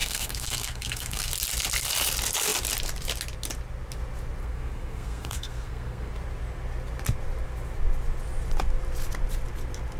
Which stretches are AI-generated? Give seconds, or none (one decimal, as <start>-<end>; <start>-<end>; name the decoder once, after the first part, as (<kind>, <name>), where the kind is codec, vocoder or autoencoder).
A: 0.0-1.3 (codec, SNAC); 4.4-6.1